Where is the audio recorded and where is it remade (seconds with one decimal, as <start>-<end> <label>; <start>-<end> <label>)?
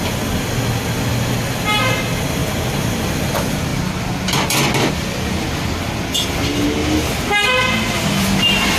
0.0-2.4 recorded; 2.4-3.3 remade; 3.3-8.8 recorded